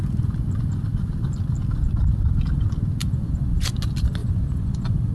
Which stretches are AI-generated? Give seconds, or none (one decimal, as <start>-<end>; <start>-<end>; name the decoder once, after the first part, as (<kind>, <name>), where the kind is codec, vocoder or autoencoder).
3.0-3.8 (vocoder, Vocos); 4.2-5.1